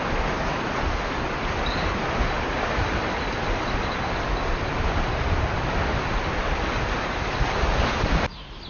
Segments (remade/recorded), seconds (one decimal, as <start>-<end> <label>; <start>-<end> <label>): 0.0-1.7 recorded; 1.7-6.7 remade; 6.7-8.7 recorded